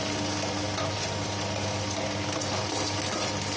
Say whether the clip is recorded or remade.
recorded